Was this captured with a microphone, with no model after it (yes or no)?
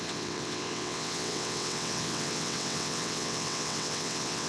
no